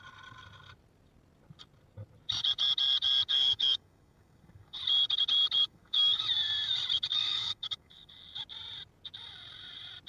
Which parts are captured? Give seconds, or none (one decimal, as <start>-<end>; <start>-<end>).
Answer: 0.0-3.3; 4.8-5.6; 6.2-7.1; 8.2-10.1